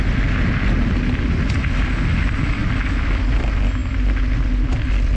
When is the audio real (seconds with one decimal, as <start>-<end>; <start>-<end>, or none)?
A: 0.0-5.2